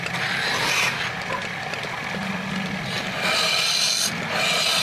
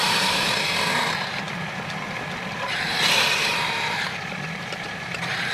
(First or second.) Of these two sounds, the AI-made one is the second